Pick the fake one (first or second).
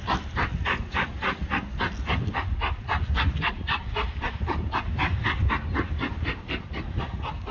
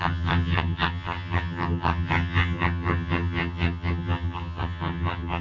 second